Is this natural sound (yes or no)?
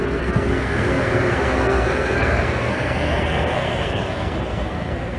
no